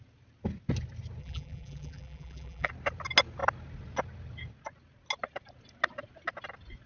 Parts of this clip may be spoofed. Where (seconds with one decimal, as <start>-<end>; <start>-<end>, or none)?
1.2-2.7